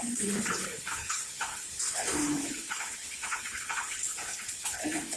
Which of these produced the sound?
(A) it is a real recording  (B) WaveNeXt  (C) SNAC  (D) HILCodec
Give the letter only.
D